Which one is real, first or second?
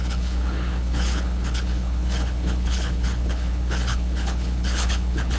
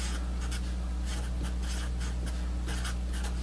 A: second